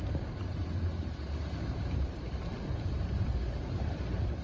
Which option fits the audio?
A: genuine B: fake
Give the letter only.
B